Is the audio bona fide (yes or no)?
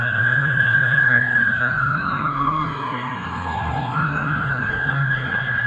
no